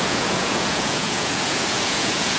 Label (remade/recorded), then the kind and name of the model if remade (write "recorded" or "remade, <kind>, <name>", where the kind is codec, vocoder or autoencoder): remade, vocoder, Vocos